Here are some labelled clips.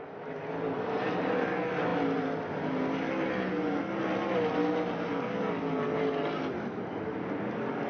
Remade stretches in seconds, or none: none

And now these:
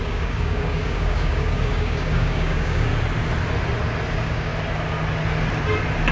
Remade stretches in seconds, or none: 0.0-2.9 (codec, DAC); 4.1-4.5

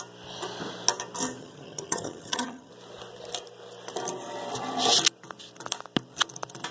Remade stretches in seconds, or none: 1.4-2.7 (vocoder, HiFi-GAN)

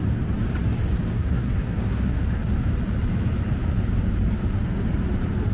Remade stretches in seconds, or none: 1.1-2.5 (codec, SNAC)

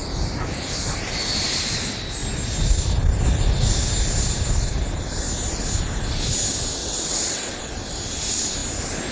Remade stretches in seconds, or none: 6.8-7.6 (vocoder, WaveNeXt)